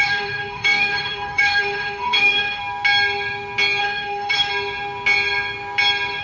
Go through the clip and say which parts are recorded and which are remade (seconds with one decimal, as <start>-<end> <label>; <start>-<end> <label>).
0.0-2.6 remade; 2.6-3.8 recorded; 3.8-4.5 remade; 4.5-6.2 recorded

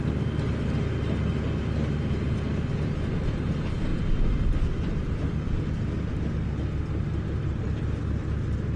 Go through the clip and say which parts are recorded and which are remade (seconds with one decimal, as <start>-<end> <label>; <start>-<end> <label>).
0.0-8.8 recorded